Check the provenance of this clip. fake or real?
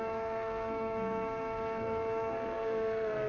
fake